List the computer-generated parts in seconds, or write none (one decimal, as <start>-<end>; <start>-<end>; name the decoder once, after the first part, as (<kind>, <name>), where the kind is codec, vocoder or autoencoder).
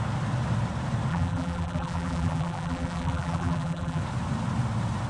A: 1.1-4.0 (vocoder, BigVGAN v2)